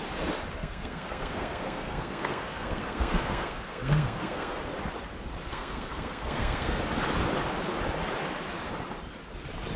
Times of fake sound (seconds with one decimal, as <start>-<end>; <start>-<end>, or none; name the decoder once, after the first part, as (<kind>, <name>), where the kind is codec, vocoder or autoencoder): 0.6-4.6 (codec, SNAC); 5.5-6.8